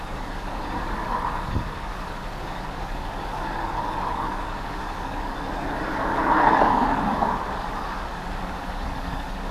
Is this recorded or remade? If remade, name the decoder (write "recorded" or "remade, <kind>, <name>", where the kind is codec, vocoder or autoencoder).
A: remade, codec, DAC